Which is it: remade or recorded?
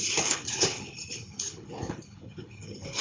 remade